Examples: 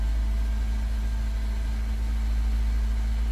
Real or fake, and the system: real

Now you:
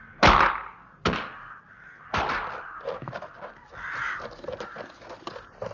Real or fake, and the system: real